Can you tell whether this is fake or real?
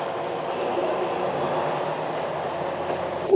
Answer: real